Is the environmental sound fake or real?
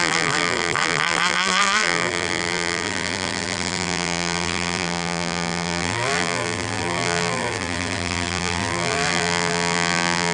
fake